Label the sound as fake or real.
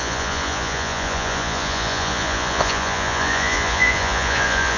fake